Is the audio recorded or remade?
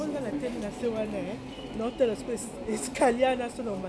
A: recorded